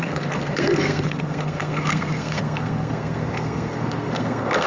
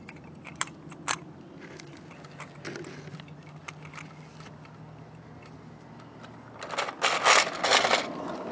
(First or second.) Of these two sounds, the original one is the second